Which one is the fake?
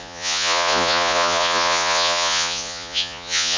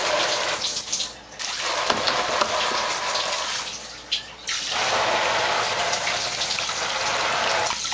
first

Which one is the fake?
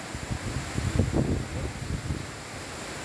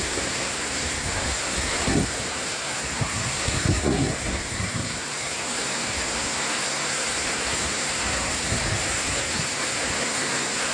second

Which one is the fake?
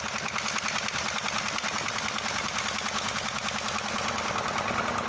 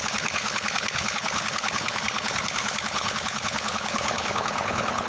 second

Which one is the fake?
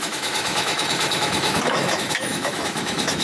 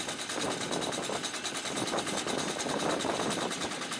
first